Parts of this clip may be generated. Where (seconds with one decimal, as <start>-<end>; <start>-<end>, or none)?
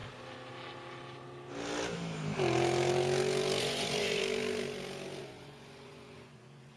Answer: 3.6-4.2; 5.2-6.8